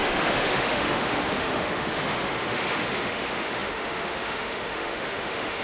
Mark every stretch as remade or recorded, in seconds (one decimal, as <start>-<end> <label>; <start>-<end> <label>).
0.0-5.6 remade

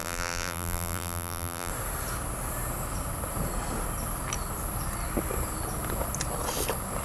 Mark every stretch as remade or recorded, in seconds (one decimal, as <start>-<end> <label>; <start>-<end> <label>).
0.0-1.7 remade; 1.7-7.0 recorded

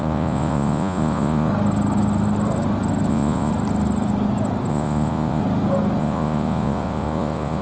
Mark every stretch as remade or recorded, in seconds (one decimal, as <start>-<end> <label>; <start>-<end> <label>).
0.0-1.5 remade; 1.5-3.1 recorded; 3.1-3.5 remade; 3.5-4.7 recorded; 4.7-5.4 remade; 5.4-6.0 recorded; 6.0-7.6 remade